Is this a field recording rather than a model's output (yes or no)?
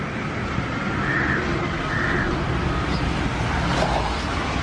yes